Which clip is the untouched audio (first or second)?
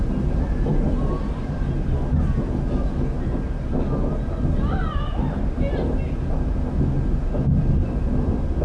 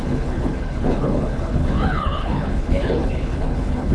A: first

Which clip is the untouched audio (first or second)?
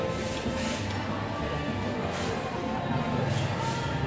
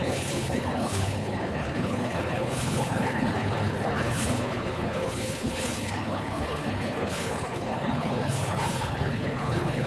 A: first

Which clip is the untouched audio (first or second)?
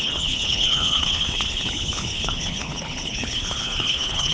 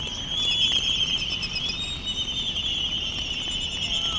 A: second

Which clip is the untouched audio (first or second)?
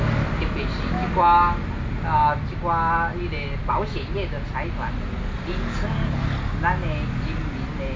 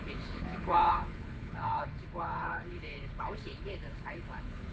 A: first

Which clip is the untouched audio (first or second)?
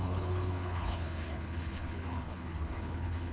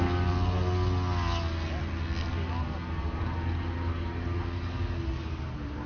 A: second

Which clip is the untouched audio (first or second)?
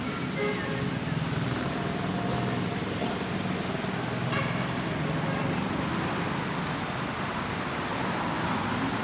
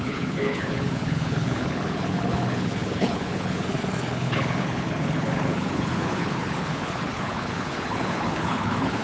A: first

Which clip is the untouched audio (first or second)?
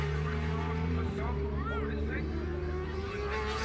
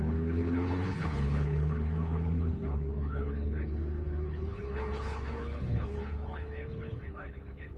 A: first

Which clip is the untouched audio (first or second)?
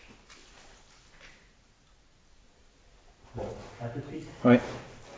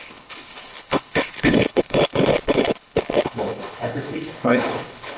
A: first